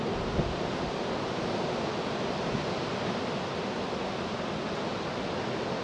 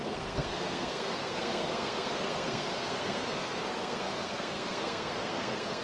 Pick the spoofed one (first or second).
second